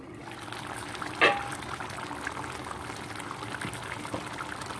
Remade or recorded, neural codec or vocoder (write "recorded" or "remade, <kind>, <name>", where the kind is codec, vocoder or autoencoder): recorded